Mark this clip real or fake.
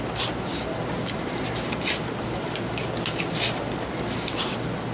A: real